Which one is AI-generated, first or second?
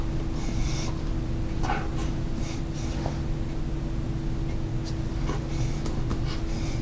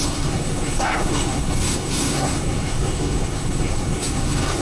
second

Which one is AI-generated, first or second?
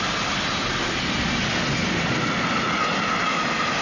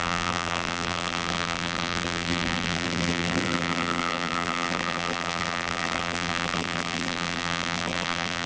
second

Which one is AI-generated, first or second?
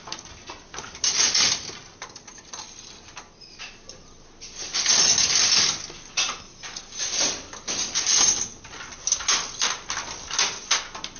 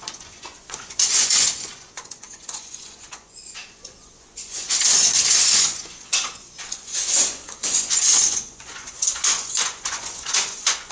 second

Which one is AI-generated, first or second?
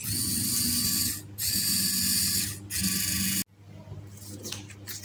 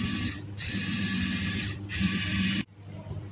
second